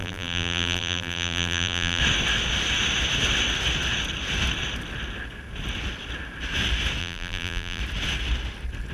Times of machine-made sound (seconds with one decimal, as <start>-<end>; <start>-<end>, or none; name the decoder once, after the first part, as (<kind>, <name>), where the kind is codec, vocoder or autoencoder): 0.0-2.0 (vocoder, BigVGAN v2); 7.0-7.8